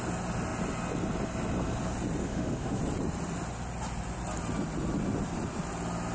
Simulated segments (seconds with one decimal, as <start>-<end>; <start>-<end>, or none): 2.2-2.8